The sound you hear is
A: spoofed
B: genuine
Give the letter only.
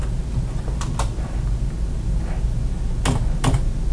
B